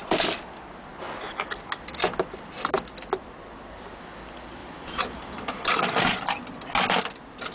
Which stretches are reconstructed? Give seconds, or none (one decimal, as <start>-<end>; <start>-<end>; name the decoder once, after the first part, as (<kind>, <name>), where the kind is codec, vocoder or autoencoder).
4.6-5.8 (vocoder, BigVGAN v2)